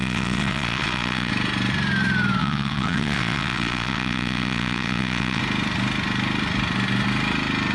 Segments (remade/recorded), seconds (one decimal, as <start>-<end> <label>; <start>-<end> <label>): 0.0-1.3 remade; 1.3-2.4 recorded; 2.4-5.4 remade; 5.4-7.7 recorded